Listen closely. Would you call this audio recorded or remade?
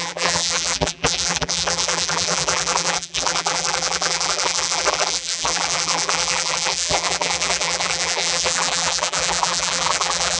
remade